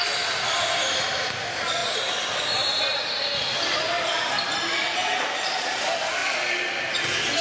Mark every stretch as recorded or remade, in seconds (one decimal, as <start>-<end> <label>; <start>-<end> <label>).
0.0-7.4 recorded